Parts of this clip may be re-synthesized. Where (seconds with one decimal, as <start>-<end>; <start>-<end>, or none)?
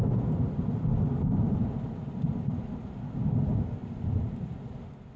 none